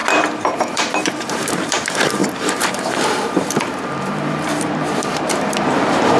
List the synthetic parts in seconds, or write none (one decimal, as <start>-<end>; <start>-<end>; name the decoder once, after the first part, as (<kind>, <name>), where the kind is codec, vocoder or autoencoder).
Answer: 0.7-6.2 (vocoder, BigVGAN v2)